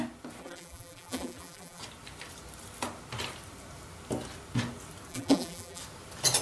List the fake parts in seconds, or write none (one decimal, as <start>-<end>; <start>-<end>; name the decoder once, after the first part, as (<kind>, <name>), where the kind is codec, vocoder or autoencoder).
0.4-1.8 (vocoder, BigVGAN v2); 5.1-5.8